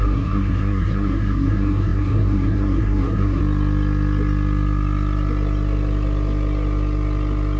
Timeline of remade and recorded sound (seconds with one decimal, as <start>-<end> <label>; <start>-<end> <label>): 0.0-3.4 remade; 3.4-7.6 recorded